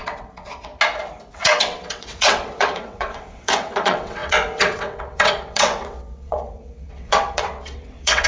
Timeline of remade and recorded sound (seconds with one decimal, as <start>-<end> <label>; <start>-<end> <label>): 0.0-0.7 remade; 0.7-1.3 recorded; 1.3-8.3 remade

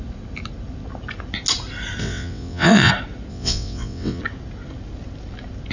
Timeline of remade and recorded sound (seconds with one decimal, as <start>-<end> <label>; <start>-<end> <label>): 0.0-2.0 recorded; 2.0-2.9 remade; 2.9-3.3 recorded; 3.3-4.2 remade; 4.2-5.7 recorded

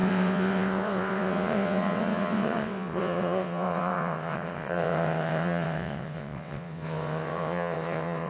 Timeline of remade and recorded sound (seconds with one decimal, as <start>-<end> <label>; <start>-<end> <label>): 0.0-8.3 remade